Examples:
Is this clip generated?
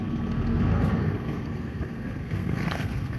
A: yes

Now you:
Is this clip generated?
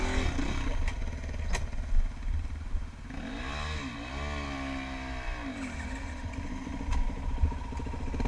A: no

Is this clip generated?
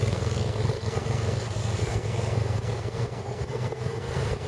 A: yes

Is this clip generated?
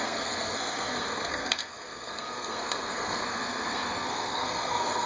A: yes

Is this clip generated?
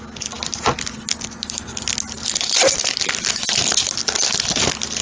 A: no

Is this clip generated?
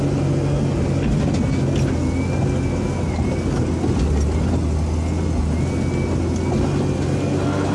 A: no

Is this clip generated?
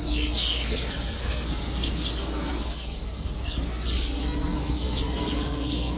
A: yes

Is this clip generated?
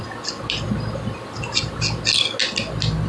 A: no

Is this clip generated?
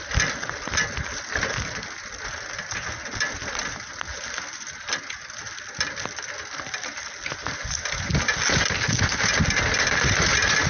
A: no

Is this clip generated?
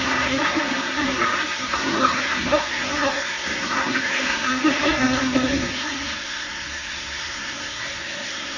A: yes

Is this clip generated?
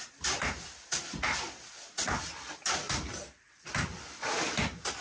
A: no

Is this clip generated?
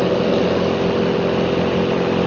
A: no